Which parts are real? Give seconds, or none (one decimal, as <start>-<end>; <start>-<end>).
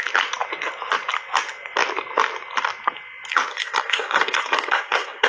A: 0.0-3.5